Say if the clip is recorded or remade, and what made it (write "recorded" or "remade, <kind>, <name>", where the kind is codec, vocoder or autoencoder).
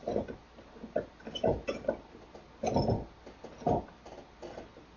recorded